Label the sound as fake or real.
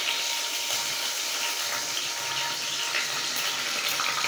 real